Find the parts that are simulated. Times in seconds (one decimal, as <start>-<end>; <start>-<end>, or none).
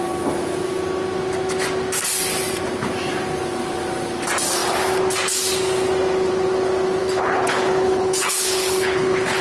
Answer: 7.0-9.4